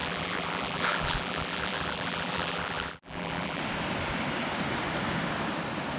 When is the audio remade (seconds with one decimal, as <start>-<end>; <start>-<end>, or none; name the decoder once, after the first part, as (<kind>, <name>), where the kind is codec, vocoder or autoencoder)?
0.0-3.6 (vocoder, BigVGAN v2)